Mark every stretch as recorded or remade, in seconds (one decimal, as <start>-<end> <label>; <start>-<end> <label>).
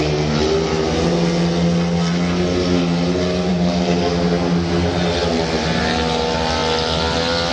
0.0-7.5 recorded